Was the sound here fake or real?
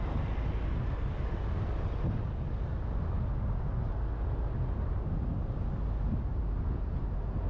real